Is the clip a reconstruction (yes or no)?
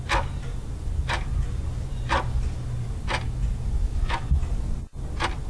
no